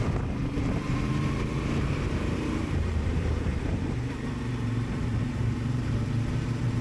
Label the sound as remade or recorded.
remade